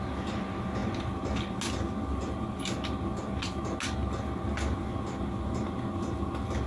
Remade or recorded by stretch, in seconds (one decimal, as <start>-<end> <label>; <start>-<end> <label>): 0.0-6.7 recorded